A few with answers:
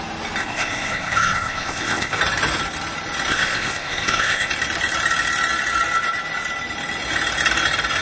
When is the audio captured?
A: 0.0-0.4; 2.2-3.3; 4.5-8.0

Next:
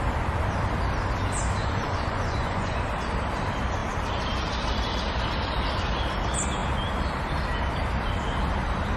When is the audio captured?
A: 0.0-1.6; 2.8-9.0